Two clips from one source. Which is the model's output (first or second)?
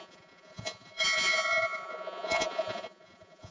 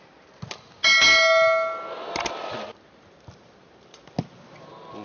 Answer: first